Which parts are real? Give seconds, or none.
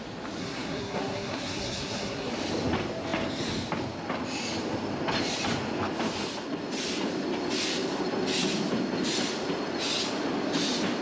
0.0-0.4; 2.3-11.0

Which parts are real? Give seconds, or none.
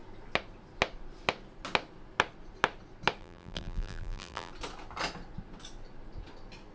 0.0-3.2; 4.5-6.7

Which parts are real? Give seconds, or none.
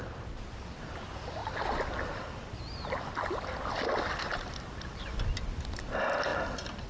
0.0-6.9